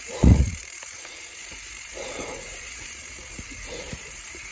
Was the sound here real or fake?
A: fake